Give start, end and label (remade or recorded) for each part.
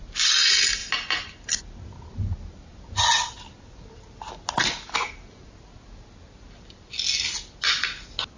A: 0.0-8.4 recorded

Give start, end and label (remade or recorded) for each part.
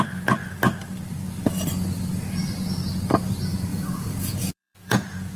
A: 0.0-3.7 recorded; 3.7-5.4 remade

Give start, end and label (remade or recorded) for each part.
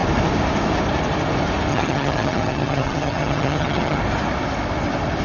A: 0.0-1.7 recorded; 1.7-4.0 remade; 4.0-5.2 recorded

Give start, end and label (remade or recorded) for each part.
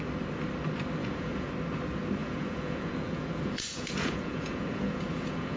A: 0.0-1.0 recorded; 1.0-1.5 remade; 1.5-2.2 recorded; 2.2-5.6 remade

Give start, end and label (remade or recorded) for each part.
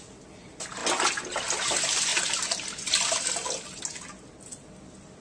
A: 0.0-5.2 recorded